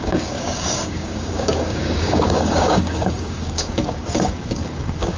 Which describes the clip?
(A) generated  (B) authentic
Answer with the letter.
A